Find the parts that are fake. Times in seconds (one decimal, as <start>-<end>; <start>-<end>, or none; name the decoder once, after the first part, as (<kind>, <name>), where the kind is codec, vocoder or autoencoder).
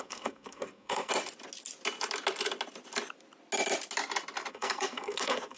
0.0-1.1 (codec, SNAC); 4.5-5.6